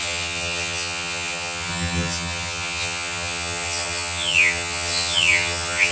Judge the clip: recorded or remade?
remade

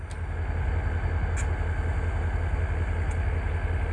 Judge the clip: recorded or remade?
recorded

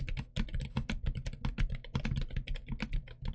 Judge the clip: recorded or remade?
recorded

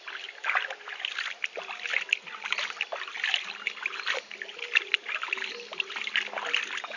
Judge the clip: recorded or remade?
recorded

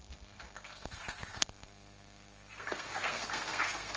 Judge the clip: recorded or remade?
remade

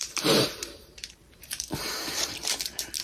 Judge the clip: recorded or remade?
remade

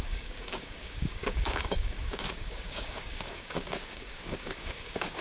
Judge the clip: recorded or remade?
remade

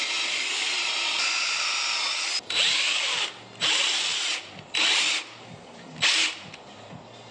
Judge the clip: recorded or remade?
recorded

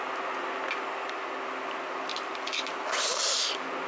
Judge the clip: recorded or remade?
recorded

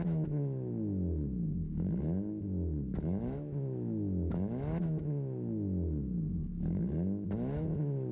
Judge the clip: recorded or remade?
remade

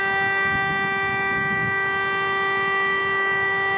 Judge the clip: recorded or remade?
recorded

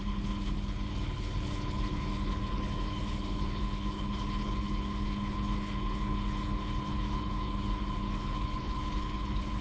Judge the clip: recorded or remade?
remade